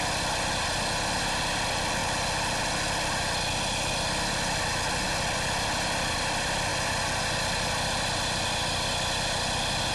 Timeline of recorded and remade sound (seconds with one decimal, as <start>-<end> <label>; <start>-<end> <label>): 0.0-9.9 recorded